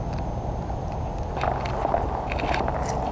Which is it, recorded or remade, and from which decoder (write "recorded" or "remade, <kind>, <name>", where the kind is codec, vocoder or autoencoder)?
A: recorded